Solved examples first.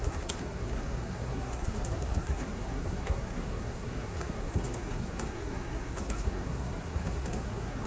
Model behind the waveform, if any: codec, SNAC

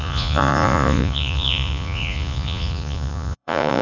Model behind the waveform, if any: vocoder, Vocos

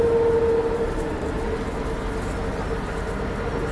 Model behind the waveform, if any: none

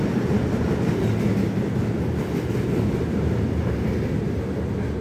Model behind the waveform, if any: none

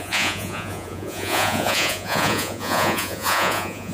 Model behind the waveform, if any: vocoder, Vocos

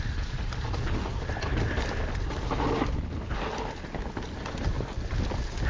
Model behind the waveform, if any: none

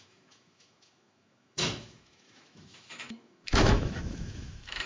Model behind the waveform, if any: autoencoder, DAC-VAE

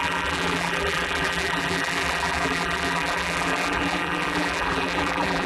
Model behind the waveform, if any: vocoder, BigVGAN v2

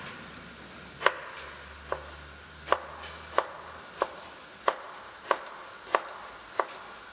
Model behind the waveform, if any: none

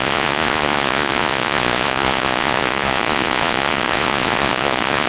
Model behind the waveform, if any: vocoder, Vocos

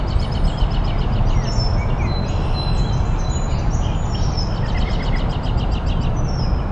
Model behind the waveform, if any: none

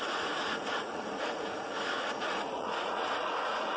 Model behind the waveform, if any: vocoder, Vocos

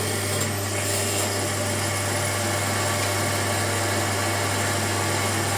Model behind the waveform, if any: none